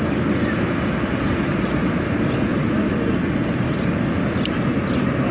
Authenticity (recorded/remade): recorded